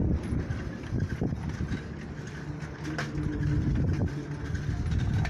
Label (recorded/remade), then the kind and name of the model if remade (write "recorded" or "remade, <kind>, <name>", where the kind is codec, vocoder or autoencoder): recorded